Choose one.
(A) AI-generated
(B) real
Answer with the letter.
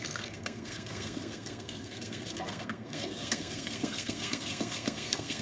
A